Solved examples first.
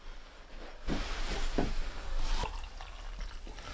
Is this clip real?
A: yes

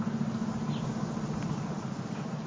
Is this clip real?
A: yes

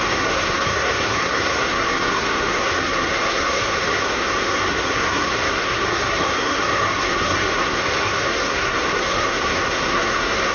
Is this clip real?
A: no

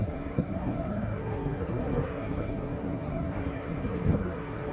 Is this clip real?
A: no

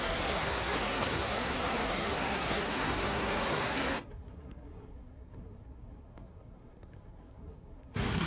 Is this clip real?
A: no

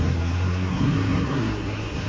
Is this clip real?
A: no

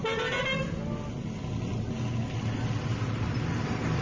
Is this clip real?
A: yes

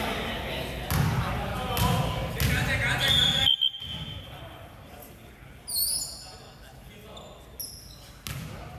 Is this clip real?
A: yes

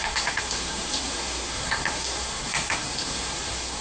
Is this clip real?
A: no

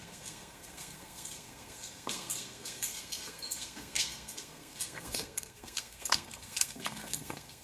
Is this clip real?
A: no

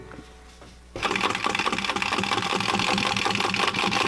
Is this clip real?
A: yes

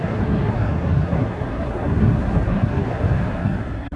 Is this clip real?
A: no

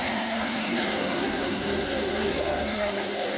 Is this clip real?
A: no